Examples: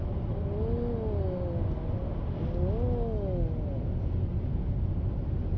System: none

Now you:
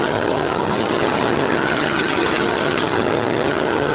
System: vocoder, HiFi-GAN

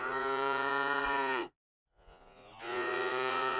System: vocoder, Vocos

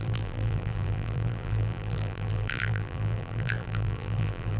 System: vocoder, BigVGAN v2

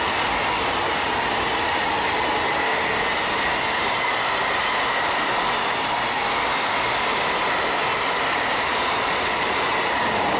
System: none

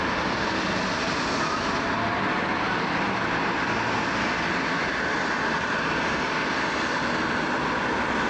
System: none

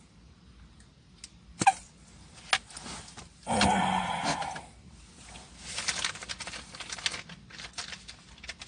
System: none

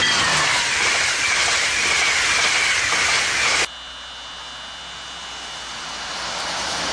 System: none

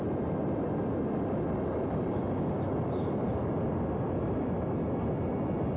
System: none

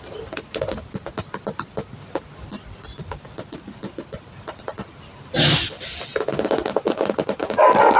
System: none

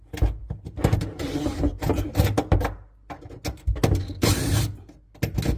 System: none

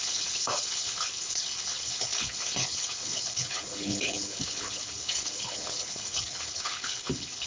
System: codec, HILCodec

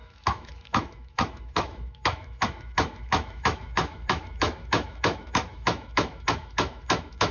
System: autoencoder, DAC-VAE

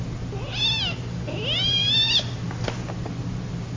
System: none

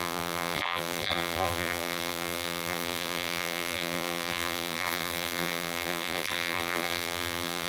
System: vocoder, BigVGAN v2